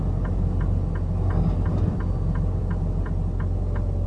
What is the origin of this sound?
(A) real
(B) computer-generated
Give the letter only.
A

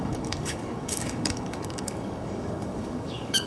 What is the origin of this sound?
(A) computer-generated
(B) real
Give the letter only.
A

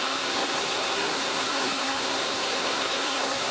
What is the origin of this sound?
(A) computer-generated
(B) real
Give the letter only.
A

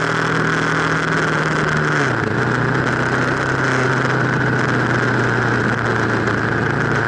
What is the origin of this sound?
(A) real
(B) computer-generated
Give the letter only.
A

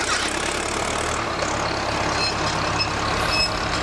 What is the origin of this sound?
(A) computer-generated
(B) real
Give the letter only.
B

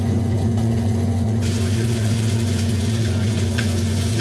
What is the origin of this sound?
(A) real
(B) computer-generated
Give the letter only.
B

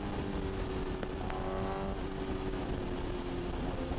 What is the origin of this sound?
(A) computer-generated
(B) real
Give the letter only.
B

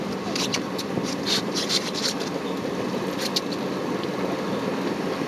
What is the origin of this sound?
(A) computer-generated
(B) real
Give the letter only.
B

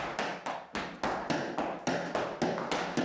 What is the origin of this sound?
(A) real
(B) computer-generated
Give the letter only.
A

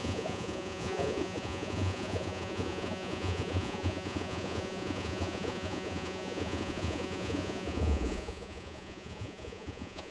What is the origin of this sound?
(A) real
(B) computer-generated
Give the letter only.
B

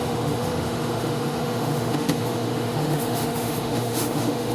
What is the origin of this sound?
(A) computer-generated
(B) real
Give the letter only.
A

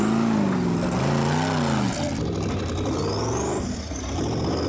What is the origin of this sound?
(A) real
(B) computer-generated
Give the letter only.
A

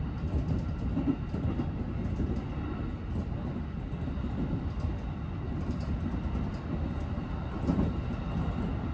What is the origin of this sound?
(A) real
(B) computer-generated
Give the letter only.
A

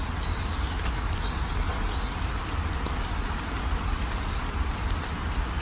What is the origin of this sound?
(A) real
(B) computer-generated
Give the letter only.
A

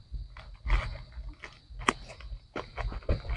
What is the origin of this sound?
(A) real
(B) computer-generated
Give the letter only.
A